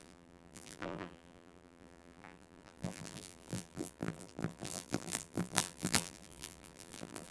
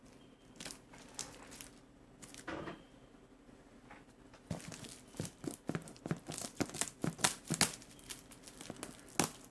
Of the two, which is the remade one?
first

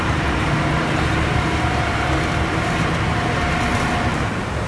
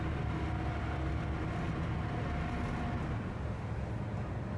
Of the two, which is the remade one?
first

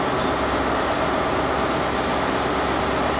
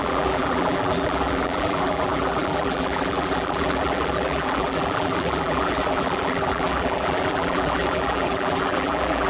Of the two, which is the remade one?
second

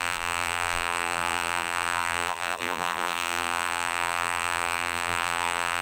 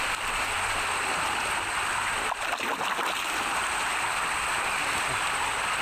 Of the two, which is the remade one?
first